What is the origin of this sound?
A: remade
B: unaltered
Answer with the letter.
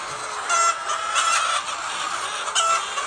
B